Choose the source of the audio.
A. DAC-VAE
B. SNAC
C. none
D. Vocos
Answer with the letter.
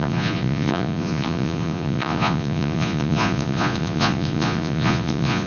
D